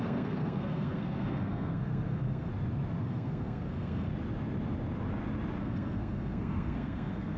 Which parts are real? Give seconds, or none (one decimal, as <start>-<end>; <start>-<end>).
2.5-3.0; 4.1-5.6